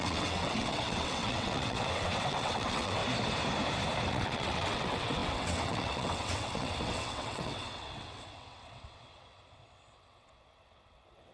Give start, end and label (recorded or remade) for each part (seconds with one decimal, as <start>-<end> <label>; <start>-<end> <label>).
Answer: 0.0-3.0 remade; 3.0-4.1 recorded; 4.1-11.3 remade

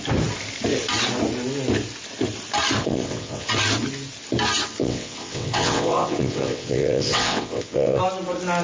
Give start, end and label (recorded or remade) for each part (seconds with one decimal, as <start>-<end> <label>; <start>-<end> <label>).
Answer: 0.0-2.8 recorded; 2.8-3.5 remade; 3.5-4.8 recorded; 4.8-8.0 remade; 8.0-8.6 recorded

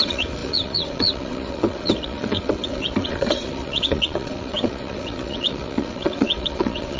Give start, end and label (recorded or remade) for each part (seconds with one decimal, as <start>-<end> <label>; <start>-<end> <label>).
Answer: 0.0-7.0 remade

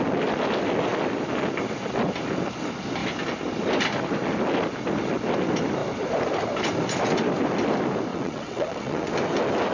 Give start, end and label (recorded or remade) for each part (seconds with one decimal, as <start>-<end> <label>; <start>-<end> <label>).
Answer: 0.0-8.1 recorded; 8.1-9.1 remade; 9.1-9.7 recorded

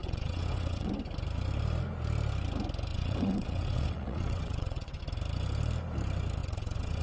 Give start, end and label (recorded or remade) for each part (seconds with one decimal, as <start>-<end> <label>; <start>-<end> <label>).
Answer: 0.0-0.9 remade; 0.9-2.9 recorded; 2.9-5.0 remade; 5.0-6.4 recorded; 6.4-7.0 remade

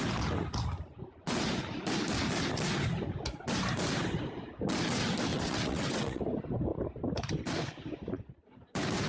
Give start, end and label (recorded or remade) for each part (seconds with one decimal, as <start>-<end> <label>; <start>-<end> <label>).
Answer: 0.0-5.3 recorded; 5.3-6.2 remade; 6.2-9.1 recorded

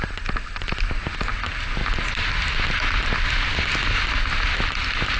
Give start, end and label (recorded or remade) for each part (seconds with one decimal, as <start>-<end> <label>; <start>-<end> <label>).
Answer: 0.0-5.2 recorded

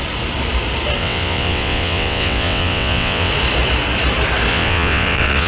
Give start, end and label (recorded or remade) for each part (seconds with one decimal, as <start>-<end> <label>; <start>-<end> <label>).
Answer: 0.0-1.0 recorded; 1.0-3.3 remade; 3.3-4.5 recorded; 4.5-5.5 remade